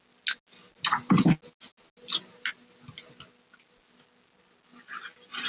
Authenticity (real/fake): real